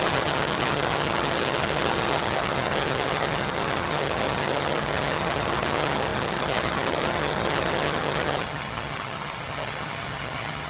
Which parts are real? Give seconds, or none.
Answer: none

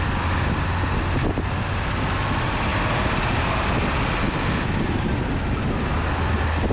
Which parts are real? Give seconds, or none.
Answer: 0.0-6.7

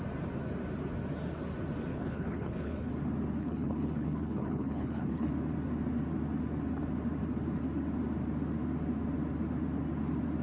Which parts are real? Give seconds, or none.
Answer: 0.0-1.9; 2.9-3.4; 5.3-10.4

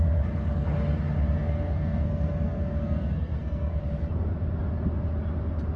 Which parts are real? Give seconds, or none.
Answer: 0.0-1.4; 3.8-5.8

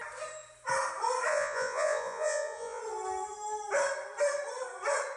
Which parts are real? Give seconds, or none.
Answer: 0.0-1.3; 2.8-5.2

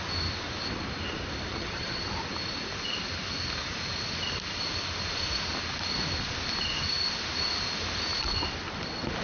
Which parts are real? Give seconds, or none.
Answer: 0.0-1.5; 2.0-9.2